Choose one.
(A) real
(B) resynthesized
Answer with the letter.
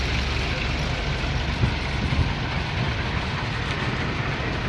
A